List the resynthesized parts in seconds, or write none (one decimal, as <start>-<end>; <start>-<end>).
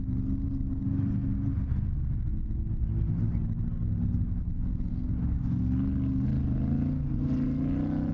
none